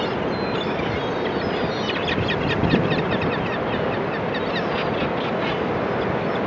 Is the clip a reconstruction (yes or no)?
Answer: no